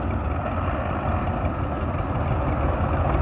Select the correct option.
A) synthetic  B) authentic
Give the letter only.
B